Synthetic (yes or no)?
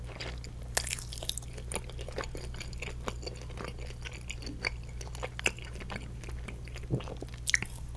no